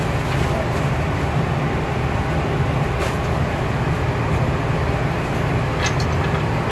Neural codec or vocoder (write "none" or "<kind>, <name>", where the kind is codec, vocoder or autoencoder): none